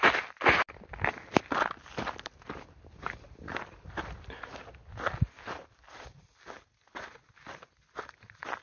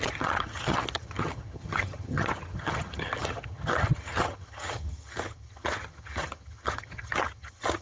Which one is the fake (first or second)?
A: second